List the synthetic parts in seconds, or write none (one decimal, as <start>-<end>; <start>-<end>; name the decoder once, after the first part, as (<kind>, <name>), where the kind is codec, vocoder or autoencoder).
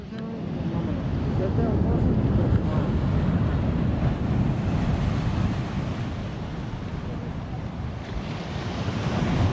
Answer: 1.1-4.8 (vocoder, BigVGAN v2); 7.2-9.1